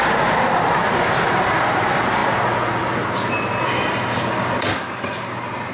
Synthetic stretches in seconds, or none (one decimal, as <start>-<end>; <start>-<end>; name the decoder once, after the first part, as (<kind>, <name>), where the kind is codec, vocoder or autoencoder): none